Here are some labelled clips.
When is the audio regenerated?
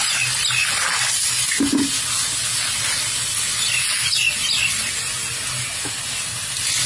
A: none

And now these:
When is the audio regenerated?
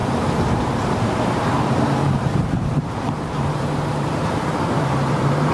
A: 0.0-5.5 (vocoder, BigVGAN v2)